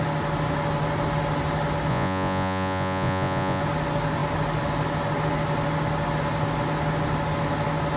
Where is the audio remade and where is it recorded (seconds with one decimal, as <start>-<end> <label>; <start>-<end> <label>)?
0.0-1.9 recorded; 1.9-3.6 remade; 3.6-8.0 recorded